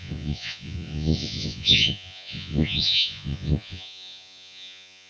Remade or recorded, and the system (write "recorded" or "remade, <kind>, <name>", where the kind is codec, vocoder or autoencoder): remade, vocoder, Vocos